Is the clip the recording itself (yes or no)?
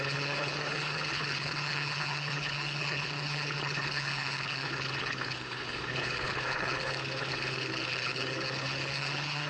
no